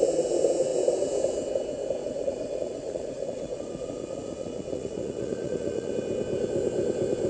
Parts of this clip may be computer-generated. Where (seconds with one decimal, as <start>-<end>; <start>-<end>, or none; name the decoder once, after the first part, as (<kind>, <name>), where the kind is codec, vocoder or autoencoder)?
2.0-5.9 (vocoder, Vocos)